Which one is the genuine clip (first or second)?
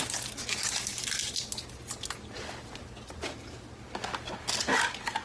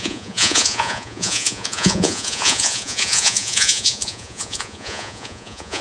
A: first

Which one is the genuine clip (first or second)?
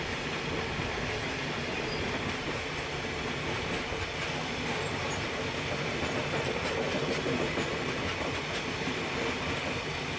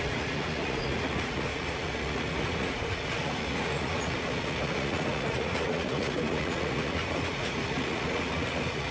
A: first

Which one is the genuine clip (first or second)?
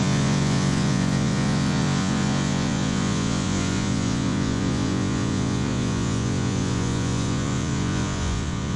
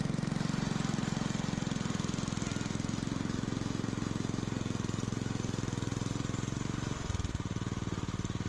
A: second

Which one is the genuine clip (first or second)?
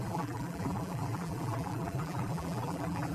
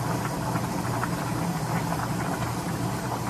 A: second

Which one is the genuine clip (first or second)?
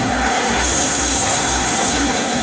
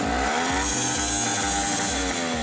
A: second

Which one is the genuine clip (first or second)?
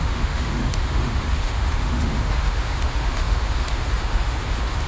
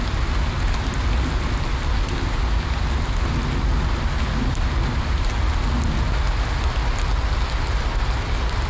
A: second